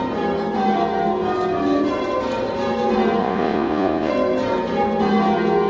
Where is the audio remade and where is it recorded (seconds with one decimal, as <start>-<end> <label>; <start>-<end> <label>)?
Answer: 0.0-3.2 recorded; 3.2-4.1 remade; 4.1-5.7 recorded